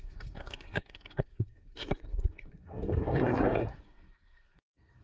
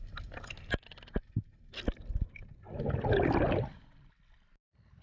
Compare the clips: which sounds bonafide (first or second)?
second